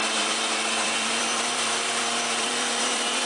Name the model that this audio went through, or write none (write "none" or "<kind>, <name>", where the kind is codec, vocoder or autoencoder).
vocoder, BigVGAN v2